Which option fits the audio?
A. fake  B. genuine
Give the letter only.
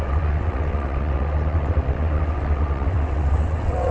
A